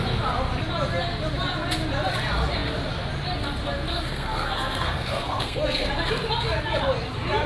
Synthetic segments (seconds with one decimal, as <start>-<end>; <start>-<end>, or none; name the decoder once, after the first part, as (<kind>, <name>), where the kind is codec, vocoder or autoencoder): 3.9-5.9 (codec, SNAC)